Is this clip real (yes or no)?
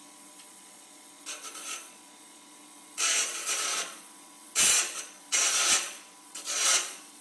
no